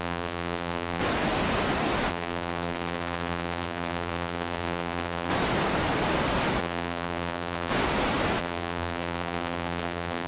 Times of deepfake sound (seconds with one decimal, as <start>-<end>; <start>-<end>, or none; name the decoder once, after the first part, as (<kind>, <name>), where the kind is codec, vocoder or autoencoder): 0.0-1.0 (vocoder, BigVGAN v2); 2.1-5.3; 6.6-7.7; 8.4-10.3